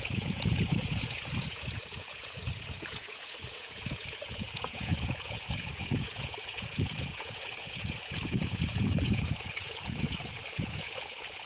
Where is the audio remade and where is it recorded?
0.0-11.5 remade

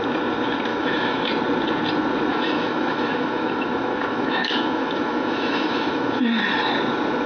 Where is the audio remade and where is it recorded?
0.0-0.7 recorded; 0.7-1.3 remade; 1.3-2.3 recorded; 2.3-6.2 remade; 6.2-7.3 recorded

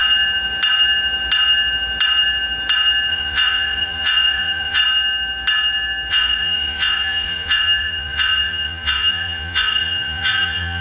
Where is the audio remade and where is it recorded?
0.0-3.1 recorded; 3.1-4.8 remade; 4.8-6.1 recorded; 6.1-10.8 remade

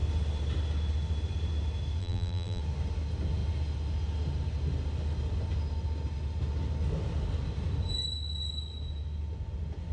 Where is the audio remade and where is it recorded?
0.0-2.0 recorded; 2.0-2.6 remade; 2.6-9.9 recorded